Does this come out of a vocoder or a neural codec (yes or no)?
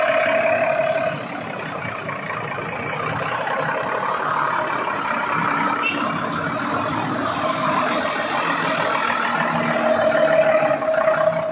no